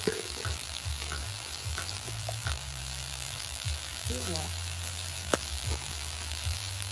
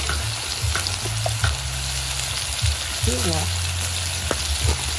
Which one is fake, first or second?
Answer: first